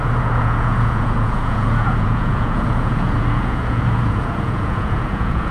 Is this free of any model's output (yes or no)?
no